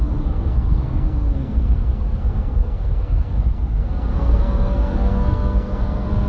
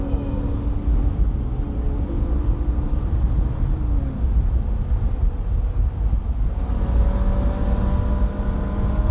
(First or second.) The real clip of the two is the second